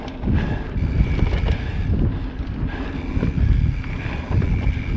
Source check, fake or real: real